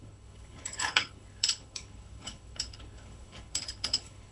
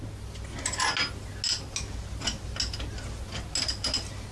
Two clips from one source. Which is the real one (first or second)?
second